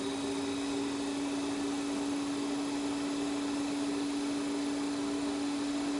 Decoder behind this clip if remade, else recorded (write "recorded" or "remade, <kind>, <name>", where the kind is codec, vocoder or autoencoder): recorded